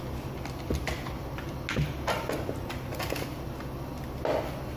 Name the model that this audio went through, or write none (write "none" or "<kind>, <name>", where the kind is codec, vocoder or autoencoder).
none